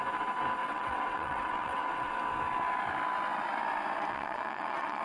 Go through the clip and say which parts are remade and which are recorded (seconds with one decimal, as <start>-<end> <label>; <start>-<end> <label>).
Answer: 0.0-0.6 recorded; 0.6-2.1 remade; 2.1-4.1 recorded; 4.1-5.0 remade